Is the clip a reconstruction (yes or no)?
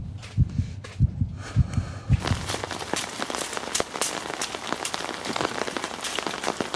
no